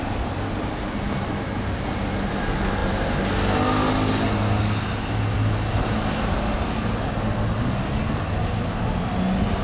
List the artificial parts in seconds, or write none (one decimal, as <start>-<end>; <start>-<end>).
none